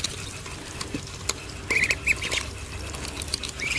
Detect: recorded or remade recorded